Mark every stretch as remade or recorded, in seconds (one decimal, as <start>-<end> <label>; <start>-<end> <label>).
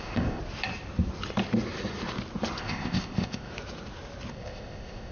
0.0-0.4 remade; 0.4-2.6 recorded; 2.6-3.5 remade; 3.5-4.3 recorded; 4.3-5.1 remade